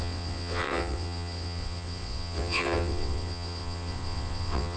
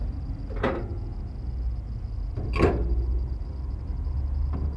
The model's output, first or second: first